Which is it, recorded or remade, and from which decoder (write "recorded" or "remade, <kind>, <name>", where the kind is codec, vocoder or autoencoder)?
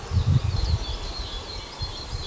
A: recorded